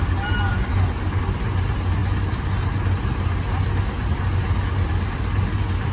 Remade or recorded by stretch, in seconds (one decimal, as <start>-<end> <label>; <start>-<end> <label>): 0.0-5.9 recorded